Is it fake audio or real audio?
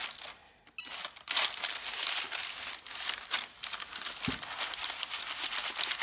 real